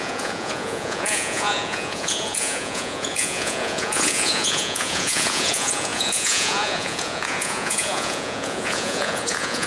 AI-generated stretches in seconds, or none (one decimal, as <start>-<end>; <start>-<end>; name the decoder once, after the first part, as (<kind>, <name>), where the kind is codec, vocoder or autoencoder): 0.0-9.7 (vocoder, Vocos)